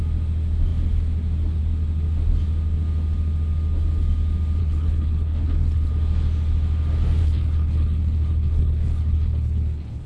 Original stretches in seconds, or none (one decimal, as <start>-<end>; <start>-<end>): 0.0-4.6; 5.9-7.2